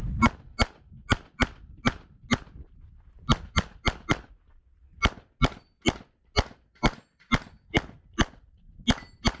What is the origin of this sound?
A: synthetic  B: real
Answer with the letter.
B